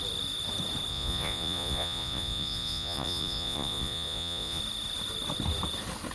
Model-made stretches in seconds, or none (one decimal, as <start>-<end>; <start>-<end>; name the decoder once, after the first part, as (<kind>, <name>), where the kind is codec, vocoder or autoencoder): 0.9-4.6 (vocoder, Vocos)